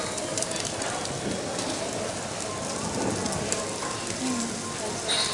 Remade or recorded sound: recorded